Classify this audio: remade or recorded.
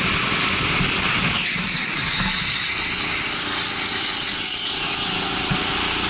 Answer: recorded